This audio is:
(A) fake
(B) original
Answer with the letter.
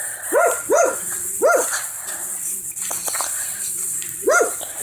B